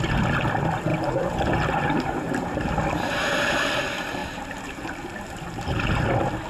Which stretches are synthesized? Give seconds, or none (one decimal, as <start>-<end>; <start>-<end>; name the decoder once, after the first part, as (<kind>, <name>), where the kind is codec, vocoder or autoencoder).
0.9-2.7 (vocoder, BigVGAN v2); 4.2-6.0